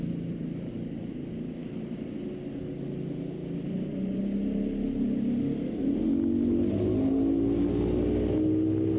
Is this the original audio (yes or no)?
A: yes